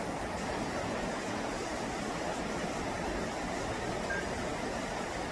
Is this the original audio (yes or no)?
yes